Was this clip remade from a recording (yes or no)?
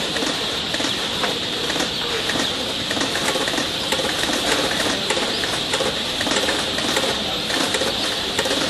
yes